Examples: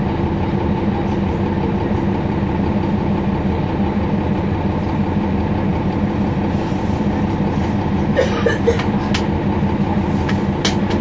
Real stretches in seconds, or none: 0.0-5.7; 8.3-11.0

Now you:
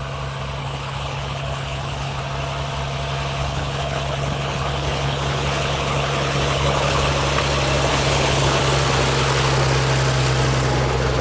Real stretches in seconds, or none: 0.0-0.6; 2.2-3.4; 7.1-7.9; 8.6-11.2

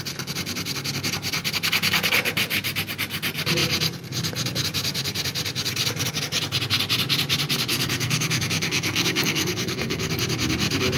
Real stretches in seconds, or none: 0.0-7.7; 10.1-11.0

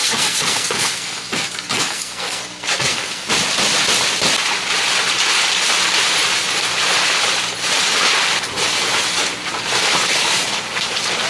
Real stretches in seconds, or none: 3.3-11.3

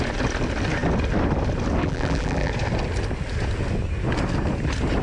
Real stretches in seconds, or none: 0.0-1.8; 2.5-5.0